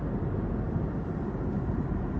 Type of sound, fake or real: fake